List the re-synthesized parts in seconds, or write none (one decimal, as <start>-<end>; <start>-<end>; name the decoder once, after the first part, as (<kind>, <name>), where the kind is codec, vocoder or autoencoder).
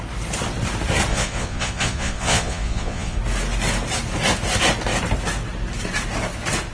1.1-3.2 (vocoder, Vocos)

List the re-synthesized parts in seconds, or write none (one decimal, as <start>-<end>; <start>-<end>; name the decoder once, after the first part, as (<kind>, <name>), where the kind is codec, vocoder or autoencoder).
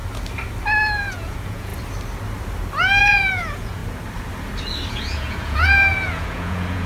1.1-1.7 (vocoder, Vocos); 3.0-3.8; 4.9-6.9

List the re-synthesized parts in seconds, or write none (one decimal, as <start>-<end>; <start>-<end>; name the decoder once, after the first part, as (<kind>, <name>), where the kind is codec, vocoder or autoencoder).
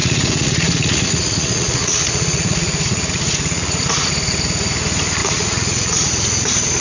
0.0-4.1 (vocoder, Vocos); 5.2-6.1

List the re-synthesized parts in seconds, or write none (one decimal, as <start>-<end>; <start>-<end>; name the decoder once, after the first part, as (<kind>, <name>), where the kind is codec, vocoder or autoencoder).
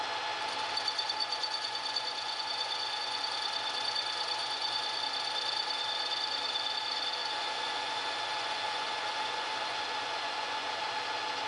1.2-3.2 (vocoder, Vocos); 4.4-5.0; 7.2-10.7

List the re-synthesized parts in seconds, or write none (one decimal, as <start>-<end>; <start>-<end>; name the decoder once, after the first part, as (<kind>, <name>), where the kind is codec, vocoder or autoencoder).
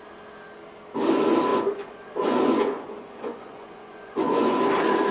1.5-4.6 (vocoder, Vocos)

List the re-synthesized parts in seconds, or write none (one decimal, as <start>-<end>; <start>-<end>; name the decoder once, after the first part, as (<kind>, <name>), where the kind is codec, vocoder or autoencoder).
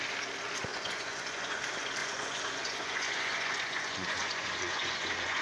0.7-1.6 (vocoder, Vocos); 2.0-5.4